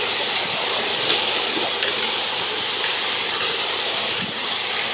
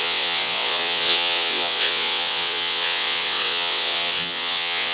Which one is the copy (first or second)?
second